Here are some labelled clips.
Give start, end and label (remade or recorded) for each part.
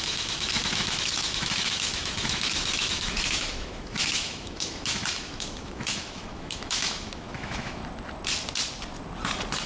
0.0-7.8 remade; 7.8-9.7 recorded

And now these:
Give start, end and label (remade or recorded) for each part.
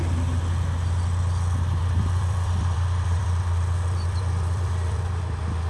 0.0-1.8 recorded; 1.8-5.2 remade; 5.2-5.7 recorded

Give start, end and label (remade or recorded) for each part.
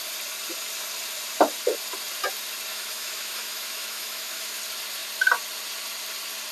0.0-2.7 recorded; 2.7-4.6 remade; 4.6-6.5 recorded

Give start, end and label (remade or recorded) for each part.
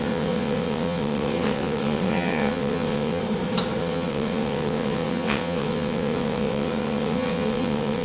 0.0-3.2 remade; 3.2-3.8 recorded; 3.8-8.0 remade